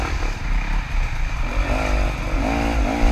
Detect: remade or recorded recorded